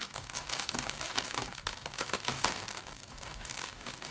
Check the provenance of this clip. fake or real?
fake